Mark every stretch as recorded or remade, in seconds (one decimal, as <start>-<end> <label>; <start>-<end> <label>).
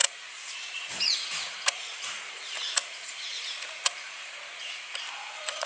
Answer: 0.0-4.4 remade; 4.4-5.1 recorded; 5.1-5.7 remade